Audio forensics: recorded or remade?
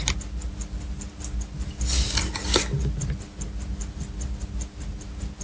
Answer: recorded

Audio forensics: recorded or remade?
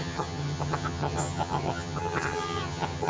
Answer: remade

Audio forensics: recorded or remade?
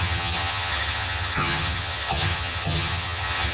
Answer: remade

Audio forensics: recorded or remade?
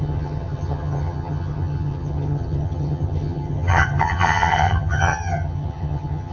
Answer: remade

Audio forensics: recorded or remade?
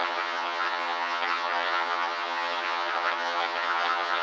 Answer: remade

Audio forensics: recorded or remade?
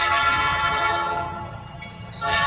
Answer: remade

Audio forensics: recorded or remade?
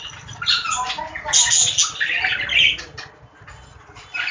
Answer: recorded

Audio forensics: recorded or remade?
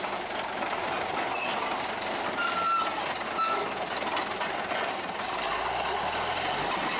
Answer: recorded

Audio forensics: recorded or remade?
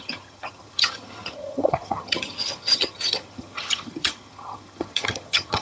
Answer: remade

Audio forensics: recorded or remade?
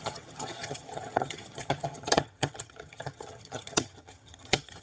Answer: remade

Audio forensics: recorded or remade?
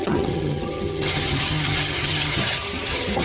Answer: remade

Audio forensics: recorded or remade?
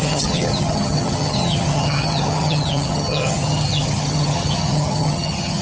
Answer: remade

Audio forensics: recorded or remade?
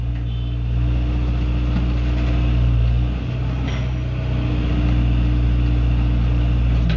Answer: recorded